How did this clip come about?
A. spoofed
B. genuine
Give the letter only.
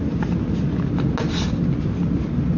B